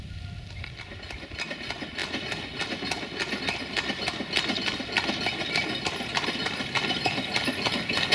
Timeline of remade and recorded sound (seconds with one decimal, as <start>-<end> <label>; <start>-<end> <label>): 0.0-8.1 recorded